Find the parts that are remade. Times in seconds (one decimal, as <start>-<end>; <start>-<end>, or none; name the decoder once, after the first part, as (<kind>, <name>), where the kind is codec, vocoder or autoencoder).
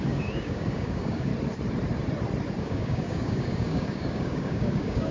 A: 0.0-1.3 (codec, DAC); 2.6-5.1